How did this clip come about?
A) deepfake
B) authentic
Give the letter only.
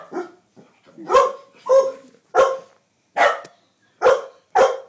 B